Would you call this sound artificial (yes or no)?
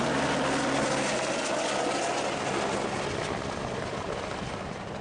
no